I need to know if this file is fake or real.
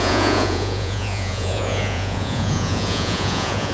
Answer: fake